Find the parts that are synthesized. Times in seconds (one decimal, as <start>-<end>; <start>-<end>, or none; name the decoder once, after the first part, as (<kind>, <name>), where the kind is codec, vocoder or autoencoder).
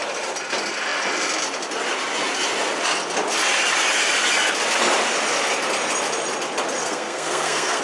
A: 6.8-7.8 (codec, SNAC)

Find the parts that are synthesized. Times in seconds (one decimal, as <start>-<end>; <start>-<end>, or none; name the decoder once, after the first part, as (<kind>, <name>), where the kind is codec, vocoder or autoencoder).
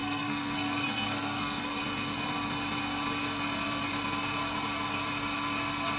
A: 0.0-1.8 (codec, SNAC)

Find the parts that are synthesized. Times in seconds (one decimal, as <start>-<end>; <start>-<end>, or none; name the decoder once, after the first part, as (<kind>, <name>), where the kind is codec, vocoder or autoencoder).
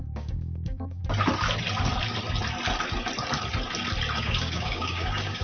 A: 0.0-1.0 (codec, DAC); 4.2-5.4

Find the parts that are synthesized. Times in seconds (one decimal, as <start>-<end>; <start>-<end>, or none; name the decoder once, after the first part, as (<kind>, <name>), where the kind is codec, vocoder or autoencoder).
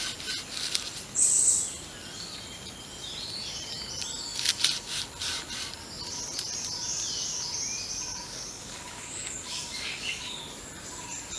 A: 8.1-10.4 (codec, DAC)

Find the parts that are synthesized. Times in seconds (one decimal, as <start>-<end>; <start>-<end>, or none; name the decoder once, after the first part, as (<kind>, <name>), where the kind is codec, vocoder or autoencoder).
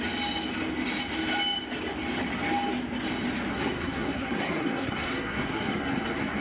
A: 3.5-6.4 (codec, SNAC)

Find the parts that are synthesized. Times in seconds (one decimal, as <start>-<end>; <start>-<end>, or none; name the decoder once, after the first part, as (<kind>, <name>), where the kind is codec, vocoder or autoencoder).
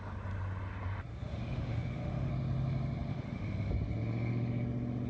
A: 1.1-2.3 (autoencoder, DAC-VAE); 3.1-3.7